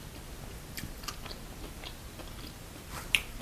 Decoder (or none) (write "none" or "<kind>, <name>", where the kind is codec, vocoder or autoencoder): none